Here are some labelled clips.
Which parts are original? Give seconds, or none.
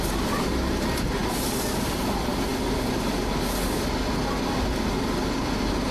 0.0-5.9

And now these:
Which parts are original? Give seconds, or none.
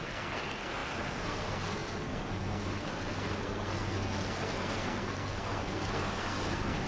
none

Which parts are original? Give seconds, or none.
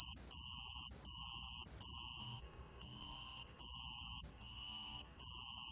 0.0-2.2; 3.6-4.3; 5.2-5.7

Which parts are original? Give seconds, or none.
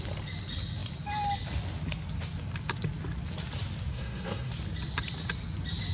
0.0-3.9; 4.5-5.9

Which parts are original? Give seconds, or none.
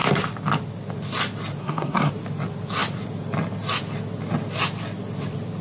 0.0-1.6; 2.1-5.6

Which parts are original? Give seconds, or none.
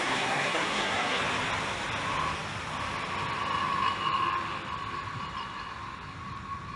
1.2-6.8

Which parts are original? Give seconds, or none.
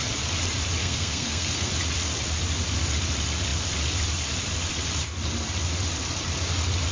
0.0-0.8; 1.7-6.9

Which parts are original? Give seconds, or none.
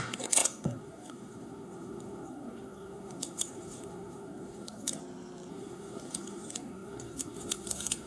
5.0-5.5